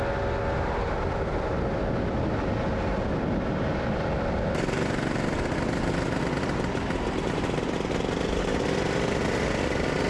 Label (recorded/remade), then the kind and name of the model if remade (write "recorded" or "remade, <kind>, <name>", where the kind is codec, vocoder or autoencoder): recorded